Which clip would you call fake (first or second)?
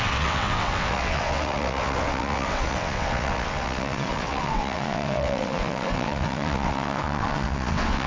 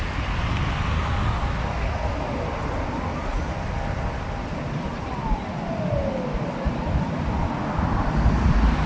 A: first